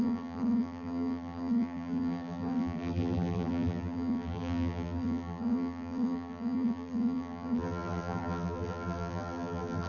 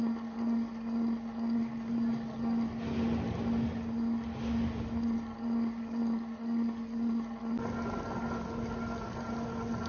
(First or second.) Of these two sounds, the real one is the second